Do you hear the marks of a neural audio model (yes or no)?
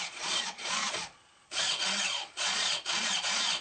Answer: yes